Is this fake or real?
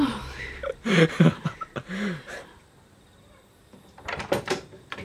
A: fake